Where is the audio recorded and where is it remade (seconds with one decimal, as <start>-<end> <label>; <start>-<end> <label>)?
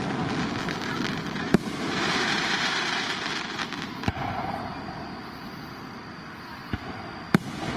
0.0-1.1 recorded; 1.1-5.8 remade; 5.8-7.8 recorded